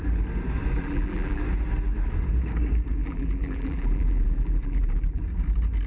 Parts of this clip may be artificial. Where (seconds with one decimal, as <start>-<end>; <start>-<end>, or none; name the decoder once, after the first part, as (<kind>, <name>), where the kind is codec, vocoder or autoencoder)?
0.7-1.4 (vocoder, BigVGAN v2); 3.0-5.2